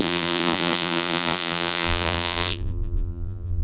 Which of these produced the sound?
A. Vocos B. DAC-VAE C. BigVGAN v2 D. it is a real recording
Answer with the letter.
C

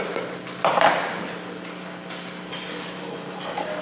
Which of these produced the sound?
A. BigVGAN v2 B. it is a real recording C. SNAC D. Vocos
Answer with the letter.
A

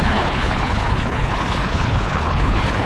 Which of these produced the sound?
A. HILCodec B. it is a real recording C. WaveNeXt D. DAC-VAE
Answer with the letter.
A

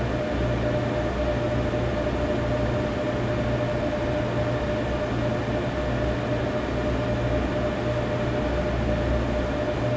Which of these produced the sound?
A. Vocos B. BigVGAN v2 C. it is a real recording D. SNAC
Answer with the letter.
C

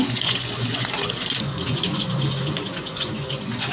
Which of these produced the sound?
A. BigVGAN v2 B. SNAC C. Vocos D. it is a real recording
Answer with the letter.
C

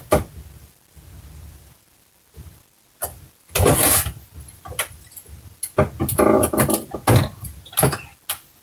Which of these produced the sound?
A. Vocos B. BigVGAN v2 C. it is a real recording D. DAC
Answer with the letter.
C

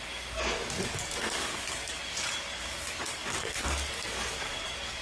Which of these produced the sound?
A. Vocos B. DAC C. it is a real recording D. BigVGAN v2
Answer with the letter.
B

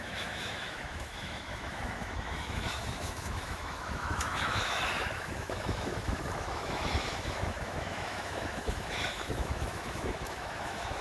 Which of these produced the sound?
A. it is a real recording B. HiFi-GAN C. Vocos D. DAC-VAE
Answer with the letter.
D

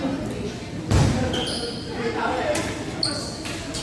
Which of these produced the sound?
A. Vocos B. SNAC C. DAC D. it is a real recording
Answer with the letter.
D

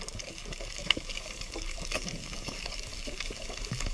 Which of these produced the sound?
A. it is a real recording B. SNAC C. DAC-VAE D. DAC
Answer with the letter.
D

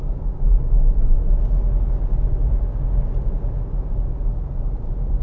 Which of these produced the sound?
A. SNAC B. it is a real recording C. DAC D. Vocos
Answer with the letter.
B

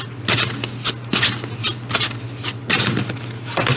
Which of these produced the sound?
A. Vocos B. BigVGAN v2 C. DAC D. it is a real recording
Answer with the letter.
D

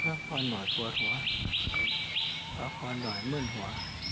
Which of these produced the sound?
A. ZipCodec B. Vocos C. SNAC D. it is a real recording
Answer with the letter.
D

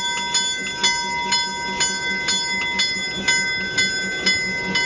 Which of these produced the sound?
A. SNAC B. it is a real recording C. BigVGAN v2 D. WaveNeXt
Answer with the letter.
B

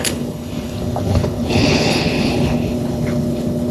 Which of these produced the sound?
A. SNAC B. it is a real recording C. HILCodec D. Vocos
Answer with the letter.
C